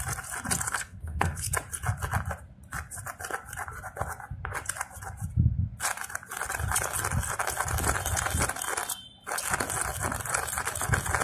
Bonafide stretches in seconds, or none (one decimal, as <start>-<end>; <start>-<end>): 0.0-0.7; 1.5-11.2